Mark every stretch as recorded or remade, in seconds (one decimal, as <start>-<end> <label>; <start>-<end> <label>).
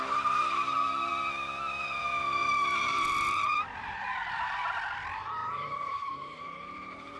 0.0-2.4 recorded; 2.4-3.9 remade; 3.9-5.4 recorded; 5.4-7.2 remade